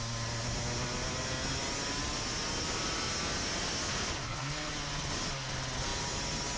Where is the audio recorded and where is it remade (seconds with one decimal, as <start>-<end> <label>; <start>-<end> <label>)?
0.0-3.9 recorded; 3.9-4.7 remade; 4.7-6.6 recorded